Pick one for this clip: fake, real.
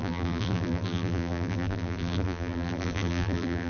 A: fake